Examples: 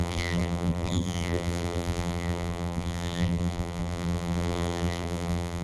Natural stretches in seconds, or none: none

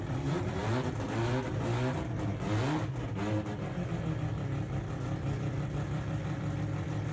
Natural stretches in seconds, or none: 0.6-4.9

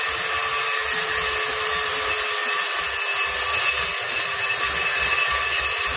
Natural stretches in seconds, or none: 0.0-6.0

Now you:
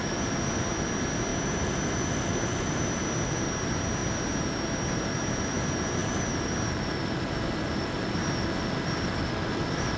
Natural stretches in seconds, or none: 1.3-2.7; 4.0-5.2; 8.2-9.3

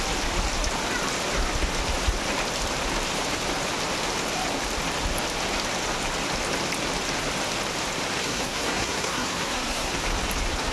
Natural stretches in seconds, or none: 0.0-8.2; 9.9-10.7

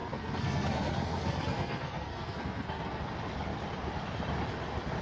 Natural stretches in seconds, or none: 3.0-5.0